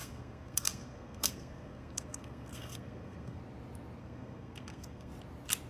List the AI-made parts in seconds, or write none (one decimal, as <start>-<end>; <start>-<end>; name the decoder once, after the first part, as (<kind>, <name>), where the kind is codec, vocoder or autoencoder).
0.0-3.4 (codec, SNAC); 4.0-5.1